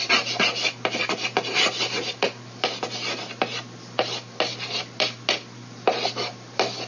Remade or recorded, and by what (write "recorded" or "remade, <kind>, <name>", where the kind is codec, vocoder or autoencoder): recorded